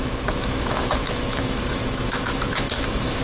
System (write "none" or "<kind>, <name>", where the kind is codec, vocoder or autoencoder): autoencoder, DAC-VAE